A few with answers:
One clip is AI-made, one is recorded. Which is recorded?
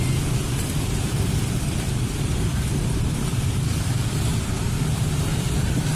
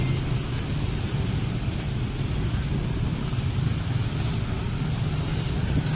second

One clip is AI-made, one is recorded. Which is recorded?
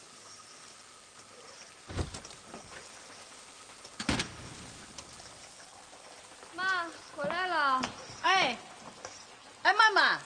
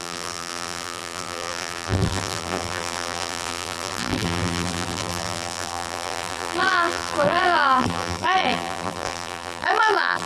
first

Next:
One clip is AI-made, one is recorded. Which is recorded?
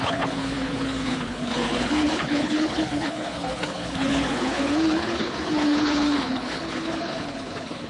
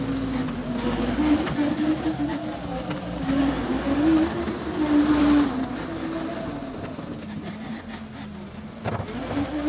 second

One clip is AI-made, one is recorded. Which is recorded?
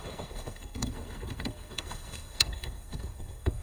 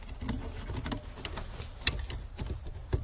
second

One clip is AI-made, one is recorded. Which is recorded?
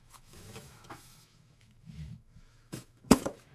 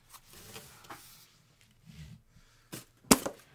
second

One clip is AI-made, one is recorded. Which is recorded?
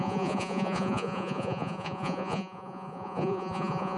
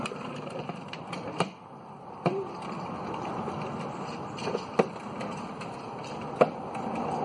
second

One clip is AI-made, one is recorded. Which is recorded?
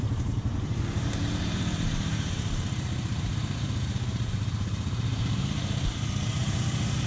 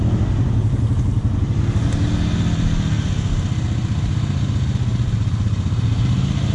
second